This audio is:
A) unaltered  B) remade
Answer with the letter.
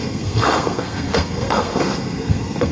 B